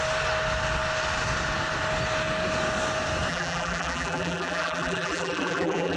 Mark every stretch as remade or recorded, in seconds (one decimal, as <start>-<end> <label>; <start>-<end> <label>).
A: 0.0-3.3 recorded; 3.3-6.0 remade